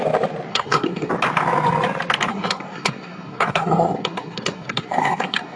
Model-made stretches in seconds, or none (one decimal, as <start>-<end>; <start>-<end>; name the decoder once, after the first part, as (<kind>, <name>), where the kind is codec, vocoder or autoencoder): 0.5-1.1 (codec, SNAC); 2.3-5.6